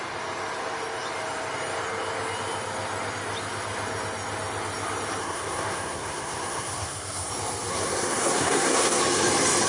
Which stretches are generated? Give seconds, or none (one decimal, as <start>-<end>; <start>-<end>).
5.2-7.3; 7.7-9.0